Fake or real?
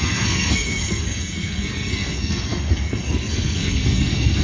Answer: fake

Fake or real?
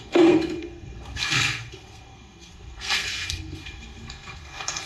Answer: fake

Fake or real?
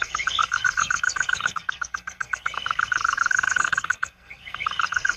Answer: fake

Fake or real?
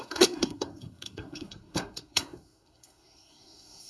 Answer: fake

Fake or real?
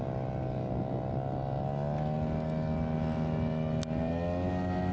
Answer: real